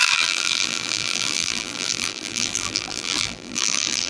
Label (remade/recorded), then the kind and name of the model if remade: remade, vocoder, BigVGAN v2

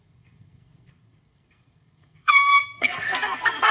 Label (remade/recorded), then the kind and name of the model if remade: remade, codec, SNAC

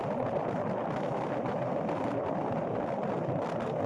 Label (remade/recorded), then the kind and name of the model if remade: recorded